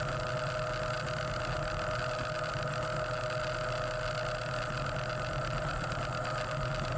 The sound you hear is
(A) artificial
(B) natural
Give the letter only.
B